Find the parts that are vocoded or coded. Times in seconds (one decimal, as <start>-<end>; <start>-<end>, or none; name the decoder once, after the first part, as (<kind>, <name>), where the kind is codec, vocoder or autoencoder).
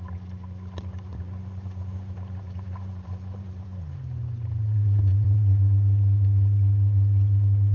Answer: 1.1-5.6 (vocoder, BigVGAN v2)